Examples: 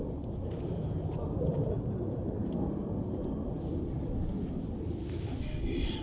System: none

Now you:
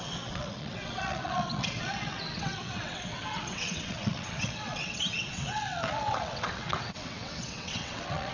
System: vocoder, WaveNeXt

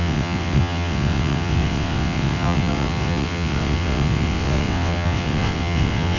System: vocoder, WaveNeXt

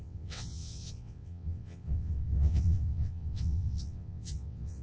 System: vocoder, WaveNeXt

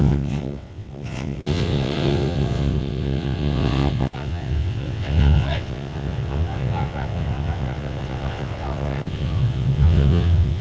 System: vocoder, WaveNeXt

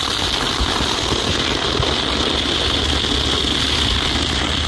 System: none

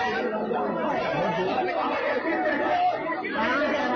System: none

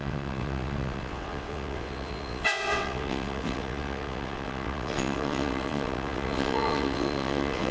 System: vocoder, WaveNeXt